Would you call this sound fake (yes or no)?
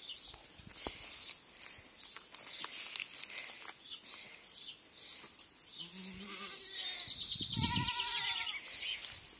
no